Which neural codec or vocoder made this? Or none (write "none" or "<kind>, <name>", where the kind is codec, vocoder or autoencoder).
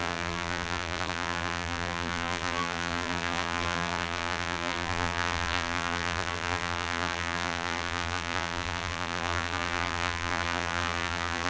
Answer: vocoder, BigVGAN v2